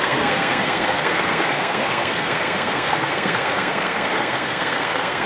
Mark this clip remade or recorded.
remade